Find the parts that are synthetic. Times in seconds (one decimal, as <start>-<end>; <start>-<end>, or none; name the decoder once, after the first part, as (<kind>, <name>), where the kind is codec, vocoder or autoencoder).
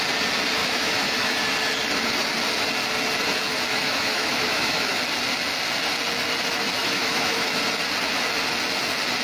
0.6-1.4 (autoencoder, DAC-VAE); 3.7-5.0; 6.8-7.6